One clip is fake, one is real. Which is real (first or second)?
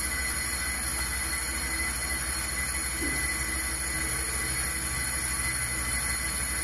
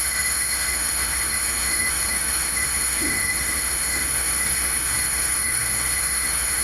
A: first